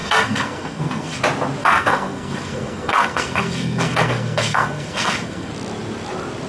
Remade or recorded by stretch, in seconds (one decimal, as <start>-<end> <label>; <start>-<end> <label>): 0.0-1.2 remade; 1.2-1.6 recorded; 1.6-5.5 remade; 5.5-6.5 recorded